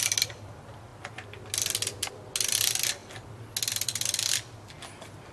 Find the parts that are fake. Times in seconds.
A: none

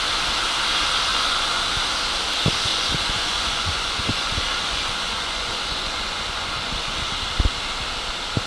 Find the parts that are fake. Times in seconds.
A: 1.1-1.6 (vocoder, Vocos); 2.7-7.1

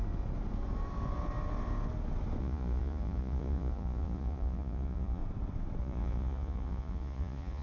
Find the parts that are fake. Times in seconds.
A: 2.4-5.2 (vocoder, Vocos); 5.8-7.6

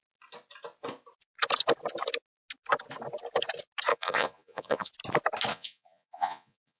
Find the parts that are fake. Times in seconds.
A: 3.9-4.9 (vocoder, Vocos); 5.5-6.8